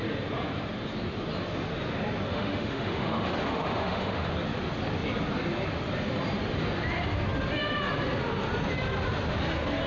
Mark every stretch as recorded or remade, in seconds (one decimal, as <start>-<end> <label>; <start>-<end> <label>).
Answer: 0.0-2.3 recorded; 2.3-4.3 remade; 4.3-9.9 recorded